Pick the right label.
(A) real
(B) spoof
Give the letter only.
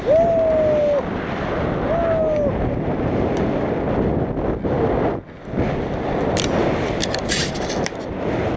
A